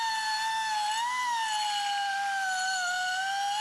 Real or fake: real